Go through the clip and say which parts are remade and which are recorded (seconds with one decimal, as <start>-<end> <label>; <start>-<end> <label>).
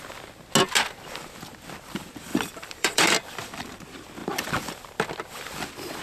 0.0-2.3 recorded; 2.3-3.8 remade; 3.8-6.0 recorded